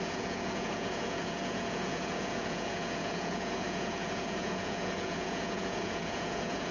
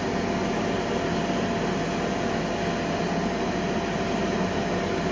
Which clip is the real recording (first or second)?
second